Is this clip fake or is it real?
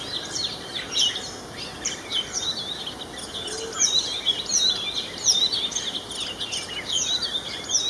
real